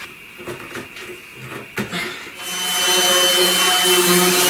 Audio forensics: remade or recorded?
recorded